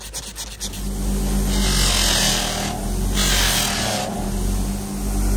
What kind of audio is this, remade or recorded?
recorded